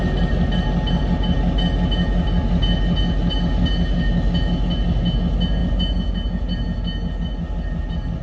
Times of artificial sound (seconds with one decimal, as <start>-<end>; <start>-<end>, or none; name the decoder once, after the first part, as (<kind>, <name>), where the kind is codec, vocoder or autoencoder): none